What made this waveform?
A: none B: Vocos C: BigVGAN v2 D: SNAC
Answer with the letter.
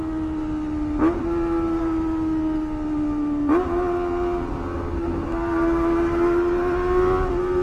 A